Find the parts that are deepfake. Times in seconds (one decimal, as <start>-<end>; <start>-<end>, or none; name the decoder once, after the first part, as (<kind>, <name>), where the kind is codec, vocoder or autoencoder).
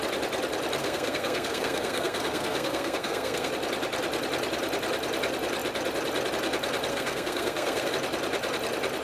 0.8-3.5 (codec, SNAC); 6.9-7.9